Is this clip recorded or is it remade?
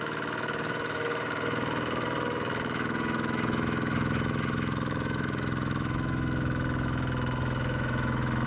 remade